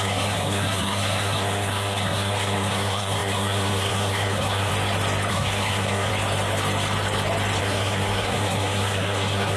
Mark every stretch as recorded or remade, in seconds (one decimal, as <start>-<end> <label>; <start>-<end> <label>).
0.0-4.7 remade; 4.7-5.3 recorded; 5.3-6.1 remade; 6.1-7.6 recorded; 7.6-9.6 remade